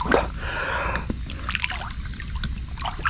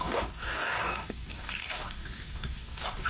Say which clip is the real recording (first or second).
first